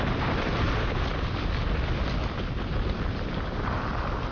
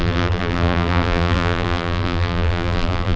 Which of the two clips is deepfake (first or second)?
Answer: second